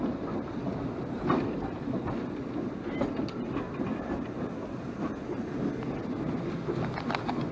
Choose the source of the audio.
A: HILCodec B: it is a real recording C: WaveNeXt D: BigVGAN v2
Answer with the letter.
B